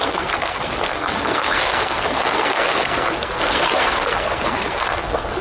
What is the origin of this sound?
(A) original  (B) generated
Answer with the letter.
B